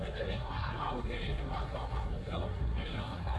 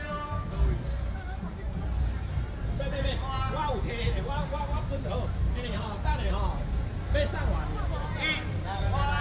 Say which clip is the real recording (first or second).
second